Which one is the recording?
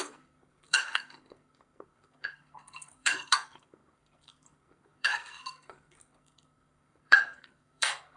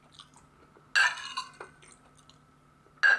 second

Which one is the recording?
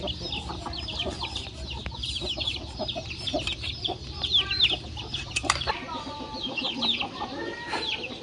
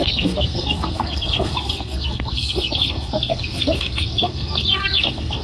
first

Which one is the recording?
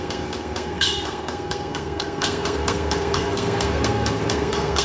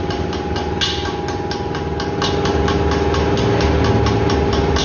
second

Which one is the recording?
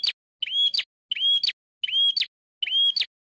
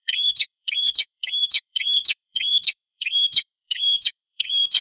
first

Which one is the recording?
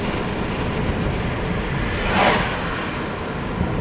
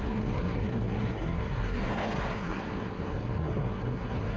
first